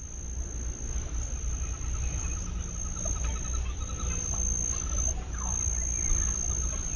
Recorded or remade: recorded